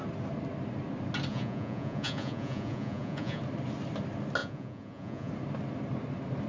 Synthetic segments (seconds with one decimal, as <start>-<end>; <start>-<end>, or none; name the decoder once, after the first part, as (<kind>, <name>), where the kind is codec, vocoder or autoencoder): 1.3-3.4 (vocoder, Vocos); 4.4-5.3